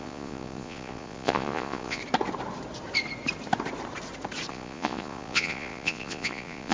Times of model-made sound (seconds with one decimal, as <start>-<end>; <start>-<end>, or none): 0.0-2.0; 4.5-6.7